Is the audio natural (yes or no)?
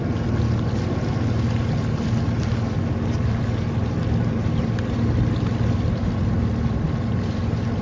yes